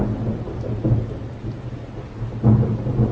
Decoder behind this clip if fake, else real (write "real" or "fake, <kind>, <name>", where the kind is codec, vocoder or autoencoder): real